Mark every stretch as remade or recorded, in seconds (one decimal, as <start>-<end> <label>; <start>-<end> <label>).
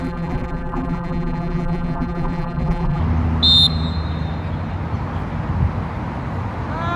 0.0-3.0 remade; 3.0-7.0 recorded